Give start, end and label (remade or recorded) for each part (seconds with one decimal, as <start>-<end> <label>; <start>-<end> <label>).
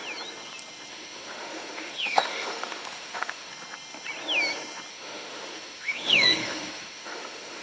0.0-0.9 recorded; 0.9-3.5 remade; 3.5-4.9 recorded; 4.9-7.6 remade